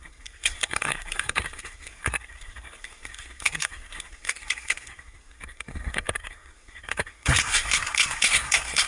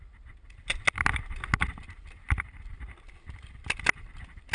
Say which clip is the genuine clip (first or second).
second